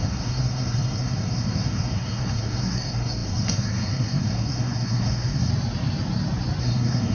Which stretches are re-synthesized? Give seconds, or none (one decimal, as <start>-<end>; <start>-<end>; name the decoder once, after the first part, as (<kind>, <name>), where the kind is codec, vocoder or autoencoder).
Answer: 0.0-5.5 (codec, SNAC); 6.6-7.1